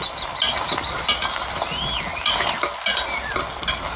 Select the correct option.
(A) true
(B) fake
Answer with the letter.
A